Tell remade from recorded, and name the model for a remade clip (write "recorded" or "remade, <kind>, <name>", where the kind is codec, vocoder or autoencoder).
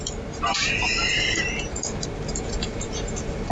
remade, vocoder, BigVGAN v2